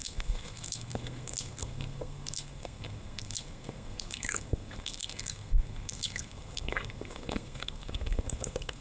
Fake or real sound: fake